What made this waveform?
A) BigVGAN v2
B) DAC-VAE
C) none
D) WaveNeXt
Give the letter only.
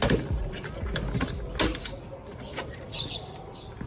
C